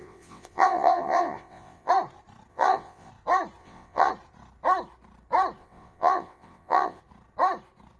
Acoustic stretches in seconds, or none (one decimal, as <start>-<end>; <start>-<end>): 1.9-2.5; 3.1-3.6; 4.1-5.6; 7.0-8.0